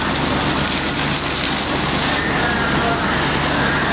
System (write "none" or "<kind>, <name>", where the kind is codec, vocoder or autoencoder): none